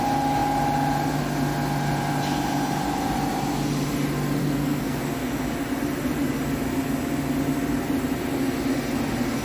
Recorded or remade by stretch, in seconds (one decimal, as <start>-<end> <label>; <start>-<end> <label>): 0.0-4.4 recorded; 4.4-5.0 remade; 5.0-9.4 recorded

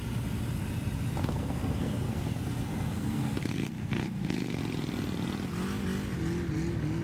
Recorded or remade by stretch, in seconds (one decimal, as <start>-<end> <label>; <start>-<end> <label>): 0.0-1.2 recorded; 1.2-4.6 remade; 4.6-7.0 recorded

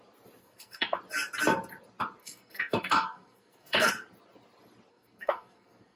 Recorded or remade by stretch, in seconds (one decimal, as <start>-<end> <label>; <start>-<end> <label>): 0.0-0.4 recorded; 0.4-1.0 remade; 1.0-2.2 recorded; 2.2-3.9 remade; 3.9-4.9 recorded; 4.9-6.0 remade

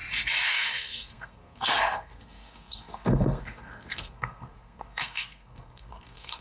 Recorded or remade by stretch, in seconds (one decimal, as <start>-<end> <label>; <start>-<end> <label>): 0.0-0.5 recorded; 0.5-6.4 remade